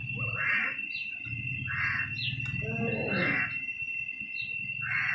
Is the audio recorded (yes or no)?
yes